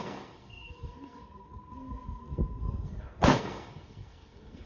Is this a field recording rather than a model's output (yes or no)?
no